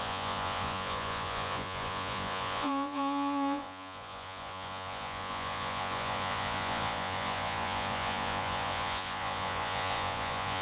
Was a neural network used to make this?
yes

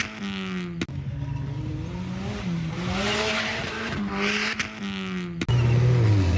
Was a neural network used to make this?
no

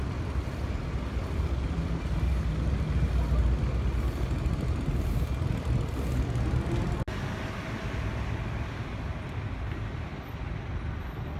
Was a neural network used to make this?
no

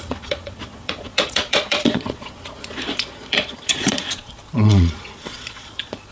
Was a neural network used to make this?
yes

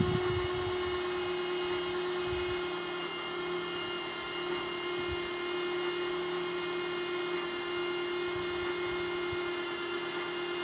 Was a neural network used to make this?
no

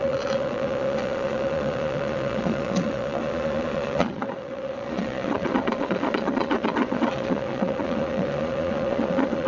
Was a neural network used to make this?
yes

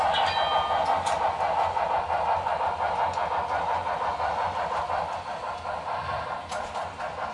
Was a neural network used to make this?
no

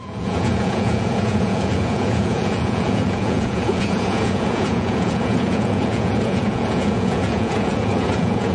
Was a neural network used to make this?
yes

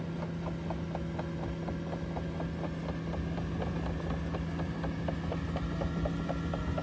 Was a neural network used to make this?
no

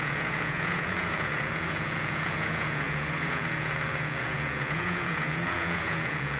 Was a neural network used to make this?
yes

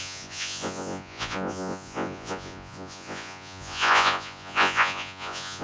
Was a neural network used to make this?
yes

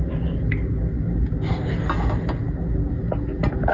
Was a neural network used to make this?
no